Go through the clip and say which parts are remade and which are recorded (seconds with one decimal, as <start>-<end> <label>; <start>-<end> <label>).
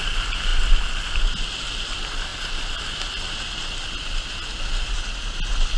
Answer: 0.0-5.8 recorded